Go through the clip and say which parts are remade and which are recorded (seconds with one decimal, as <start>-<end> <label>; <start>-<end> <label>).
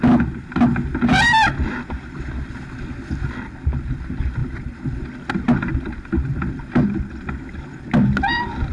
0.0-8.7 recorded